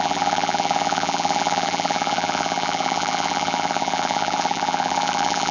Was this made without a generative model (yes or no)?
no